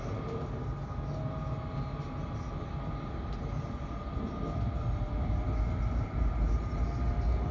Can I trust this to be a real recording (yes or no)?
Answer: yes